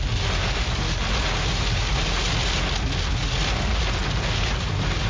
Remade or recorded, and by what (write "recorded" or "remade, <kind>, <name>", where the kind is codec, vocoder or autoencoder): recorded